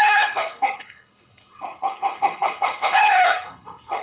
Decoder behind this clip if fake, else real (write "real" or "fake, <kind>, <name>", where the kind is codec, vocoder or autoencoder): fake, codec, HILCodec